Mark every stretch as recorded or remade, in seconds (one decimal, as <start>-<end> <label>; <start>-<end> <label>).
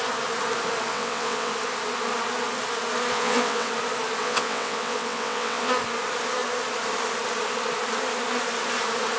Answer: 0.0-0.9 recorded; 0.9-1.5 remade; 1.5-3.1 recorded; 3.1-3.7 remade; 3.7-4.2 recorded; 4.2-5.7 remade; 5.7-9.2 recorded